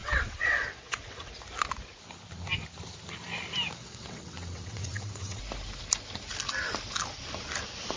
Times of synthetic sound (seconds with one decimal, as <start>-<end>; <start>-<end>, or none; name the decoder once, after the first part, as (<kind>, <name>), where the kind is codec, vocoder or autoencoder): 0.0-1.3 (vocoder, WaveNeXt); 3.8-5.4